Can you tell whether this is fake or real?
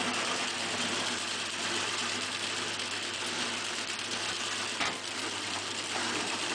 real